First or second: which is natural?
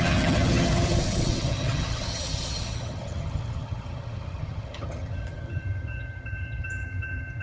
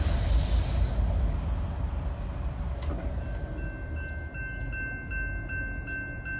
second